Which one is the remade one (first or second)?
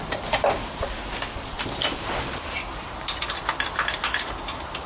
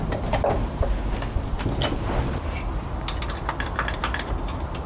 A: first